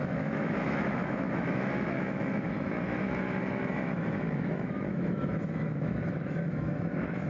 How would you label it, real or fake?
fake